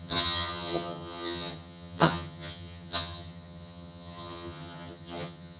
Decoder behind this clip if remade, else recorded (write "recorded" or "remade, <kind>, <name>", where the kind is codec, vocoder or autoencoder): remade, vocoder, HiFi-GAN